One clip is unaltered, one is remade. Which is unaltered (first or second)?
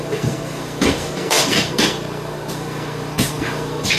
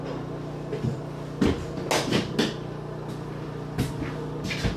second